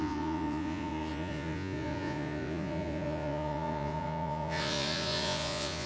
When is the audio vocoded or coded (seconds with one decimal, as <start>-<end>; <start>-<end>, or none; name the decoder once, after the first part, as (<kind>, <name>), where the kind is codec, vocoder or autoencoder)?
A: 0.0-5.9 (vocoder, Vocos)